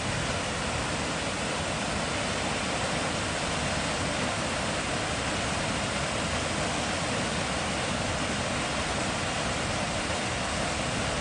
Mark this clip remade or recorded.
recorded